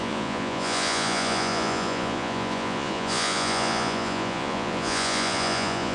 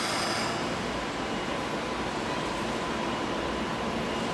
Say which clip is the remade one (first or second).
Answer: first